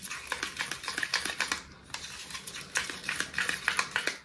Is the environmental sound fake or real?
real